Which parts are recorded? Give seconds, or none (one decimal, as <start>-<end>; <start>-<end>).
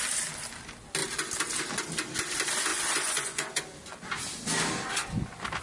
0.0-2.7; 3.6-5.6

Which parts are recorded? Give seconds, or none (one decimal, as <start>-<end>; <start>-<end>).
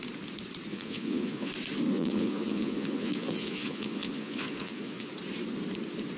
0.0-0.7; 1.5-1.9; 5.1-6.2